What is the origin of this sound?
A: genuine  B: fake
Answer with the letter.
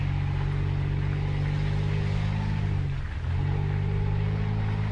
A